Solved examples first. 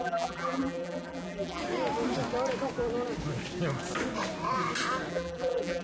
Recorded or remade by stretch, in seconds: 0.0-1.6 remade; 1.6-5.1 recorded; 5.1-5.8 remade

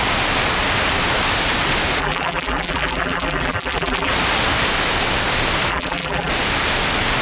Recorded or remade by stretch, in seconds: 0.0-2.0 recorded; 2.0-4.1 remade; 4.1-5.7 recorded; 5.7-6.3 remade; 6.3-7.2 recorded